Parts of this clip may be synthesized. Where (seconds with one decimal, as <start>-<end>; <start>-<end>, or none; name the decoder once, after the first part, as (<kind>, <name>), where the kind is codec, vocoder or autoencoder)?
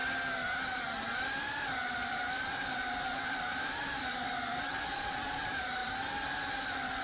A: 1.2-7.0 (vocoder, BigVGAN v2)